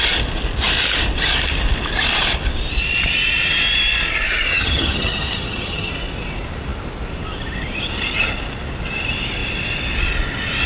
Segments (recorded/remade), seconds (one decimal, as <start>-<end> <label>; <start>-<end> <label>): 0.0-4.5 recorded; 4.5-5.9 remade; 5.9-10.7 recorded